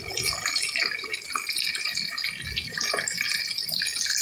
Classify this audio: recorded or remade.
recorded